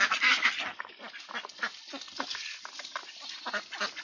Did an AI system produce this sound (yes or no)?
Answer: no